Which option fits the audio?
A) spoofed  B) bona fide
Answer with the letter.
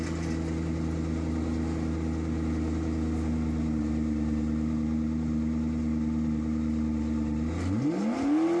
B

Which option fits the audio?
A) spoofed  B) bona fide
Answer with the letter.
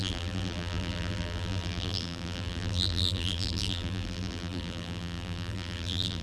A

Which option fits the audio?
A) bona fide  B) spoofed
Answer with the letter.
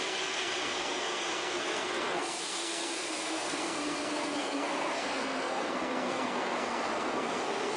B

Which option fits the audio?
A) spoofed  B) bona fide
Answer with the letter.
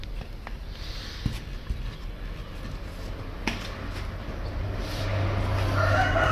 B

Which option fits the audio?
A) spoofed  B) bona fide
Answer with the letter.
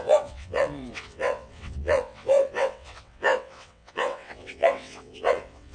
A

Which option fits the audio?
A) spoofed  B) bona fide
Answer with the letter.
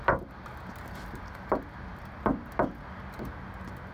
B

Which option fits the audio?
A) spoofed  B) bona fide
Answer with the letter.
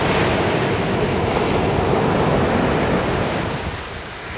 B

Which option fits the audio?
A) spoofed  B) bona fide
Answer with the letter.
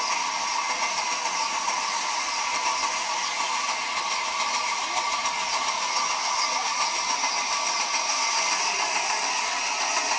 B